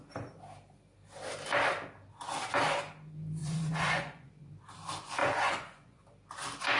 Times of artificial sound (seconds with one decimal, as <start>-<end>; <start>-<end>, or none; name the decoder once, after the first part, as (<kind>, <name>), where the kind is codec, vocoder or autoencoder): 3.4-4.3 (vocoder, Vocos); 5.2-6.0